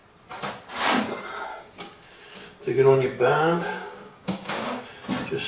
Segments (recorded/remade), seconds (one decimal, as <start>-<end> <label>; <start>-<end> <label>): 0.0-1.5 recorded; 1.5-4.8 remade; 4.8-5.5 recorded